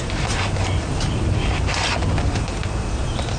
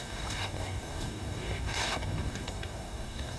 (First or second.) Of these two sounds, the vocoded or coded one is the second